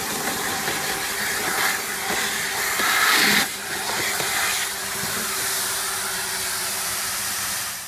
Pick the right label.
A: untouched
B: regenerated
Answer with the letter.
B